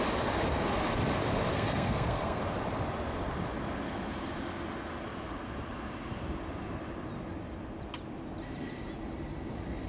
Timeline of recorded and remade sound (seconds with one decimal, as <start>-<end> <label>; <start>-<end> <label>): 0.0-1.5 recorded; 1.5-2.4 remade; 2.4-9.9 recorded